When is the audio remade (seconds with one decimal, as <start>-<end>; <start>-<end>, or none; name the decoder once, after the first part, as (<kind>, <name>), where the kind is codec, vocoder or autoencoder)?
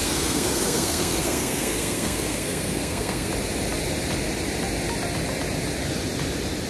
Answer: 0.0-3.3 (codec, SNAC)